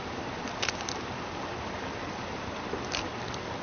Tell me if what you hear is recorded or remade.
recorded